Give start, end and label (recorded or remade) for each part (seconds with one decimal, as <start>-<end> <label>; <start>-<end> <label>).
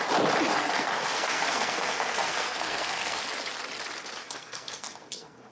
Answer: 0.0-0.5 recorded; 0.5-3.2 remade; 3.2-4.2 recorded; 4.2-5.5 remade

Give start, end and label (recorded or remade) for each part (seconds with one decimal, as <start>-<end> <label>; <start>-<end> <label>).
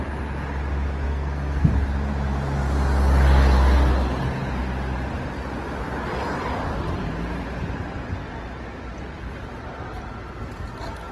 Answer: 0.0-1.1 recorded; 1.1-1.7 remade; 1.7-11.1 recorded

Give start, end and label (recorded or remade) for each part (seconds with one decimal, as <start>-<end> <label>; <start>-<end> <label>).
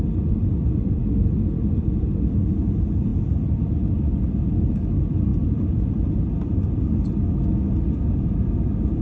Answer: 0.0-9.0 recorded